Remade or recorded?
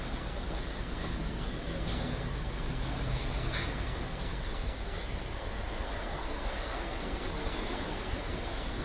remade